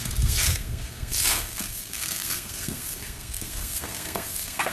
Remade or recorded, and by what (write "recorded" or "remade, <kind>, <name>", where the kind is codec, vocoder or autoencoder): remade, codec, SNAC